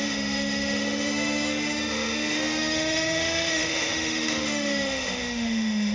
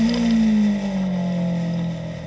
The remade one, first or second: first